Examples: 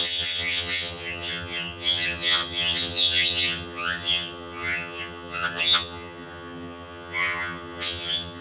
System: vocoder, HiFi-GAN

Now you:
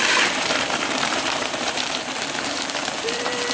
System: vocoder, BigVGAN v2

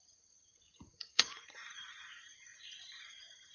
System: vocoder, Vocos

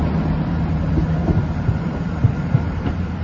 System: vocoder, BigVGAN v2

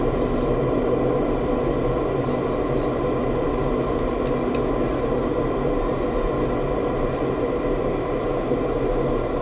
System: none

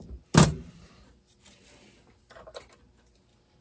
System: none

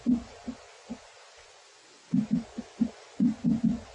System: vocoder, Vocos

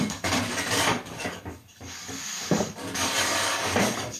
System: codec, DAC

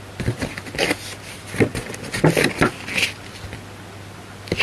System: none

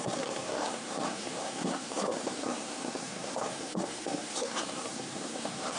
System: codec, SNAC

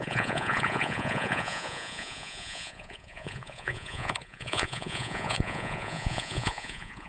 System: vocoder, Vocos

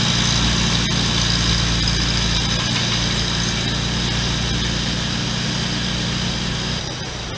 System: none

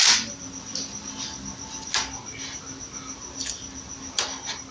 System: none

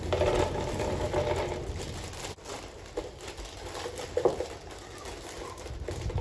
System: none